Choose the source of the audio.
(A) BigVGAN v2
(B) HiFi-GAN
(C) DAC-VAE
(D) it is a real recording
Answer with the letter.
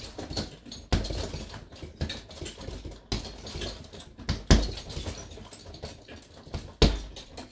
D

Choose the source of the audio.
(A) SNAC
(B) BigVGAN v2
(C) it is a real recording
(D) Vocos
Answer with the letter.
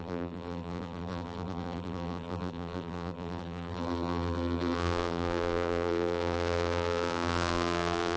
B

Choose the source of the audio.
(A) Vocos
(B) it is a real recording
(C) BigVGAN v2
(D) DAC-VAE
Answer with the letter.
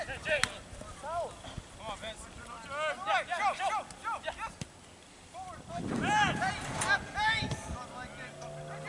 B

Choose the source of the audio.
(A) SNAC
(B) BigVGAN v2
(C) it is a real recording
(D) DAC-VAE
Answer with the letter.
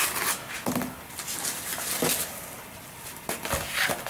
C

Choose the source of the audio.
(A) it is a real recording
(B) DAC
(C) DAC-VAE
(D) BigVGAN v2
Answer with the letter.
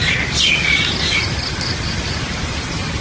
A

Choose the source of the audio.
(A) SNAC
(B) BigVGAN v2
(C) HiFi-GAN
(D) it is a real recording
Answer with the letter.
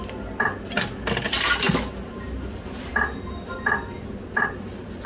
D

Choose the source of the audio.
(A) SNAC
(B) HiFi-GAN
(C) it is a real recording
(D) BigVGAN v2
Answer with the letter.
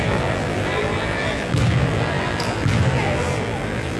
D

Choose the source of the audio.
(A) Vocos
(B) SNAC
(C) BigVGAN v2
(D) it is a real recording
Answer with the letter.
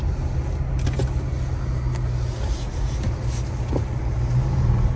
D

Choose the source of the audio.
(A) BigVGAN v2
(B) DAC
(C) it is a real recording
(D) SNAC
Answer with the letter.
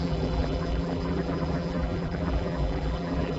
A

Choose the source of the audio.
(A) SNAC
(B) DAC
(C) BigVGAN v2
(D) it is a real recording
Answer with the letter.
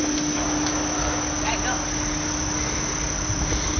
D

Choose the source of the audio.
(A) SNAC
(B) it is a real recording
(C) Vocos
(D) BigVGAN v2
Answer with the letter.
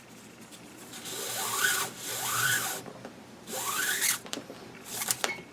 D